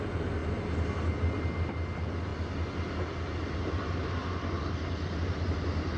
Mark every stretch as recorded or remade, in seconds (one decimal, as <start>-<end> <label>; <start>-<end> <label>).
0.0-6.0 recorded